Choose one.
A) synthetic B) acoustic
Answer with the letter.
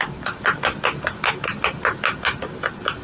B